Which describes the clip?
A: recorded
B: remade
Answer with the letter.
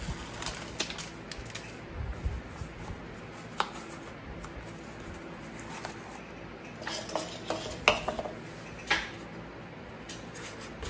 A